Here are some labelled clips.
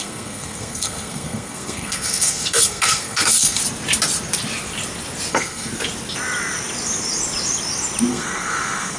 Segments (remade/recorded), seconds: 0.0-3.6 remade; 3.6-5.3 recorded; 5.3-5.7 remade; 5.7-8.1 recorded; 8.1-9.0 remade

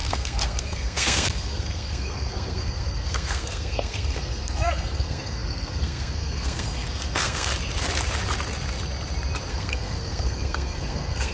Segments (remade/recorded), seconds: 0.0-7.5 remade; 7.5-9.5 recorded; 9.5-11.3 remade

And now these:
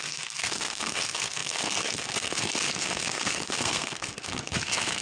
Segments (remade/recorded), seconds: 0.0-5.0 remade